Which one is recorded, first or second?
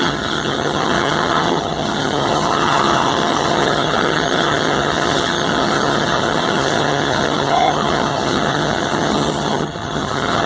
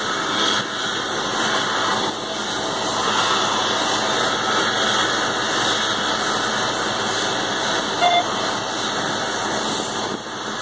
second